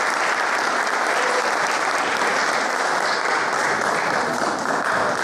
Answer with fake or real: real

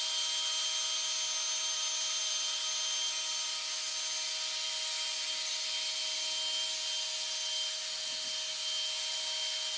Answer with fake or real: real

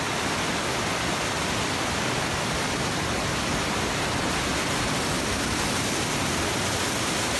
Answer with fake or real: real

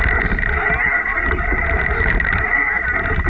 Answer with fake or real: real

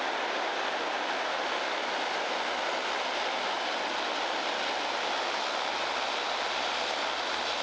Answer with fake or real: real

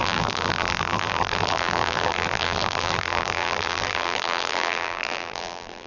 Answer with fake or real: fake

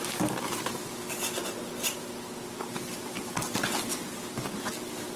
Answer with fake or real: real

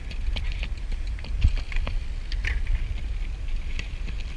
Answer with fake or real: real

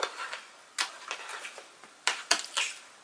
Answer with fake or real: real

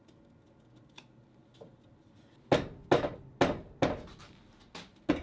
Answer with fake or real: real